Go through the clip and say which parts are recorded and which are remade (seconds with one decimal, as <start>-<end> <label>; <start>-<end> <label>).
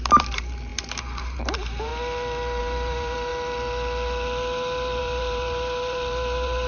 0.0-1.9 remade; 1.9-2.6 recorded; 2.6-3.3 remade; 3.3-5.0 recorded; 5.0-6.7 remade